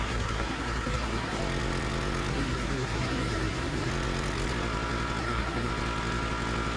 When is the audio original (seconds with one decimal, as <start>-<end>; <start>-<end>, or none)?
1.4-2.3; 3.9-5.2; 5.7-6.8